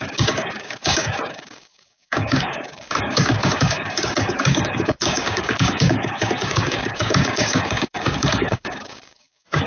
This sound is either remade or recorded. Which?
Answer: remade